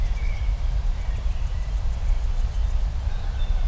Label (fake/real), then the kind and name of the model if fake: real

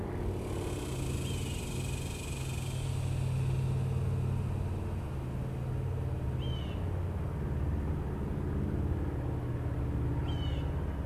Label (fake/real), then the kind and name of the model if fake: real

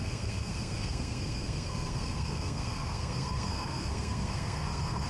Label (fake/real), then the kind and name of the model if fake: fake, codec, SNAC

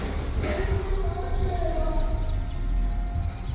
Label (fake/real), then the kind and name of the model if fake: fake, vocoder, BigVGAN v2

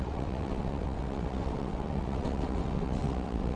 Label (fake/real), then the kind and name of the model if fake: fake, vocoder, WaveNeXt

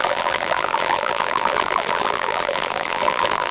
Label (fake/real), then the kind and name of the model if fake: fake, vocoder, BigVGAN v2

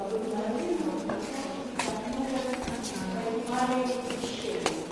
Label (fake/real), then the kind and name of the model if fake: real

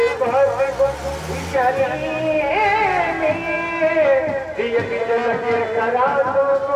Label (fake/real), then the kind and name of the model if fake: real